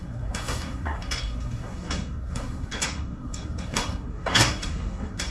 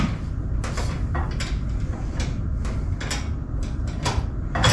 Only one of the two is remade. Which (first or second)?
first